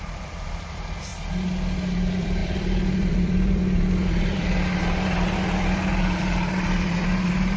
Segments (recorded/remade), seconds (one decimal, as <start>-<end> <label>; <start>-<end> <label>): 0.0-1.1 remade; 1.1-1.9 recorded; 1.9-7.6 remade